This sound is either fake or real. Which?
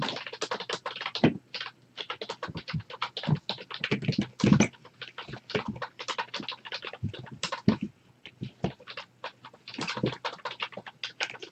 real